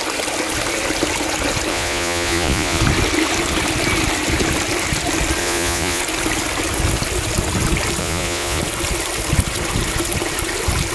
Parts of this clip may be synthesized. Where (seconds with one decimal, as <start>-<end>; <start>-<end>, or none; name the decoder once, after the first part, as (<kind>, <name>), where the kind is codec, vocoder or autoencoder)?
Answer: 1.7-2.8 (vocoder, Vocos); 5.4-6.0; 8.0-8.6